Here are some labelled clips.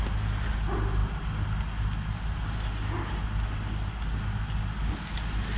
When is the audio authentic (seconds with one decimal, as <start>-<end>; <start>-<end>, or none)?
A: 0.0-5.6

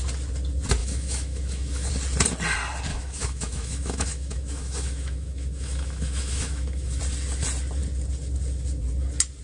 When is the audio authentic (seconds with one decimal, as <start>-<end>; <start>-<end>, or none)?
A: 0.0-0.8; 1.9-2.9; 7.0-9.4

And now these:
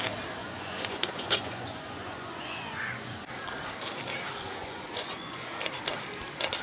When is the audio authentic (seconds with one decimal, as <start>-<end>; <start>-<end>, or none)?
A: 0.0-0.4; 3.2-4.6; 5.5-6.6